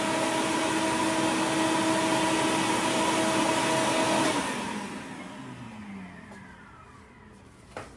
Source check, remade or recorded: recorded